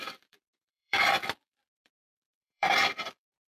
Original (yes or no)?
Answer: no